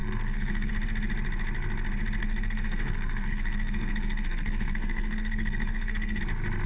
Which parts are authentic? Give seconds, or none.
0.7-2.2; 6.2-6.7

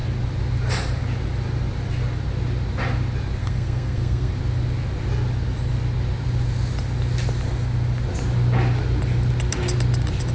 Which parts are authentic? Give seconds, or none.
0.0-3.4; 4.3-10.3

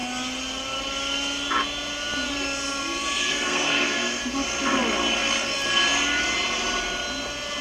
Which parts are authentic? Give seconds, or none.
0.0-3.2; 4.2-7.6

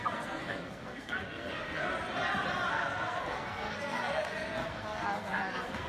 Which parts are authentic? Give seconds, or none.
1.9-2.7

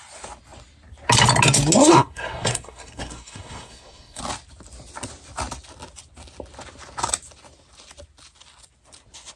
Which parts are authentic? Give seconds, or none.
0.0-1.8; 4.2-9.4

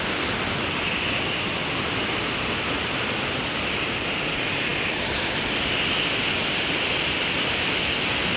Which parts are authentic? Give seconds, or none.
0.0-8.4